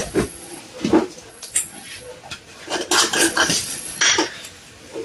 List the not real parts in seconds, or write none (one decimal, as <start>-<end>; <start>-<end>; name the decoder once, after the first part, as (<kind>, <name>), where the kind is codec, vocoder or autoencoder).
0.0-0.6 (vocoder, Vocos); 1.3-2.1; 3.2-4.0